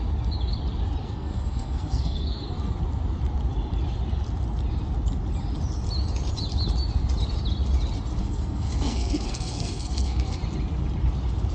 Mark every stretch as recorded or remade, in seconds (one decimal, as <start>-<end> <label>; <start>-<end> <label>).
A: 0.0-1.0 recorded; 1.0-2.4 remade; 2.4-8.2 recorded; 8.2-10.4 remade; 10.4-11.5 recorded